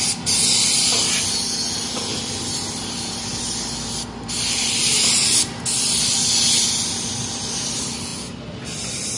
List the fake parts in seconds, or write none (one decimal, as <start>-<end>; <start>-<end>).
none